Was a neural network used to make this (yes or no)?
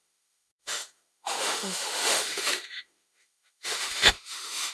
yes